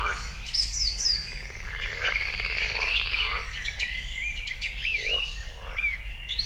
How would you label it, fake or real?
fake